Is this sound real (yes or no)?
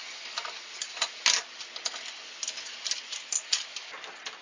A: yes